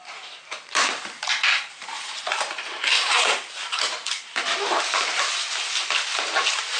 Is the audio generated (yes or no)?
yes